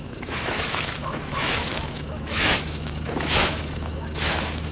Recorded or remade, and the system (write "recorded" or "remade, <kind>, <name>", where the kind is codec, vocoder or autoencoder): remade, autoencoder, DAC-VAE